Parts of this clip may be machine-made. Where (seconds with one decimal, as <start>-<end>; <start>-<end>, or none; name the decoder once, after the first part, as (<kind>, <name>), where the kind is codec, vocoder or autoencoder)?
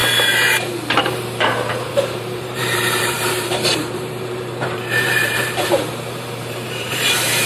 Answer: 1.0-7.5 (vocoder, BigVGAN v2)